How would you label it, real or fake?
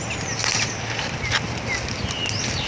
real